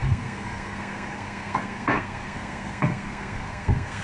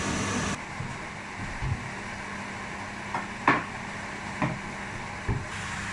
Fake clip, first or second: first